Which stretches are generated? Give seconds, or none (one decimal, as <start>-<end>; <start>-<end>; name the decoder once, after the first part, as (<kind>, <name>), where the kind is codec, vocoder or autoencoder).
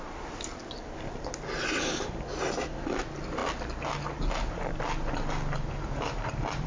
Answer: none